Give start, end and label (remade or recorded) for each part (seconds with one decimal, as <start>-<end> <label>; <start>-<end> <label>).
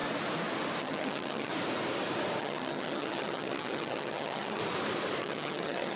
0.0-0.8 recorded; 0.8-1.5 remade; 1.5-2.4 recorded; 2.4-4.6 remade; 4.6-5.2 recorded; 5.2-6.0 remade